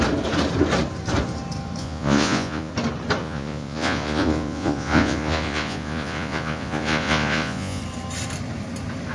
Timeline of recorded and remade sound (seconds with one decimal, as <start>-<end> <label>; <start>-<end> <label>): 0.0-1.8 recorded; 1.8-2.7 remade; 2.7-3.2 recorded; 3.2-7.8 remade; 7.8-9.1 recorded